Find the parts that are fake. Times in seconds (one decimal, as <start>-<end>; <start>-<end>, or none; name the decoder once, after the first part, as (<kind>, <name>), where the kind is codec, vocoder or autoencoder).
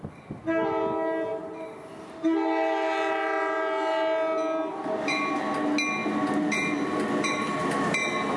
none